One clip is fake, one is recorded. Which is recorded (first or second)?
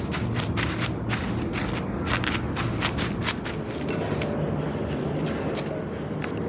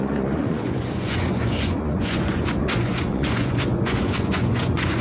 first